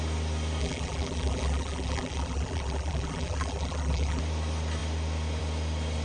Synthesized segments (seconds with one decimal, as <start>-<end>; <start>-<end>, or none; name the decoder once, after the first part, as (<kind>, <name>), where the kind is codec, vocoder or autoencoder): 0.6-4.2 (vocoder, BigVGAN v2)